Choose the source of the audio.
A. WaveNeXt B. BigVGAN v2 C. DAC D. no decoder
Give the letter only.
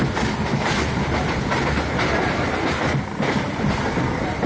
D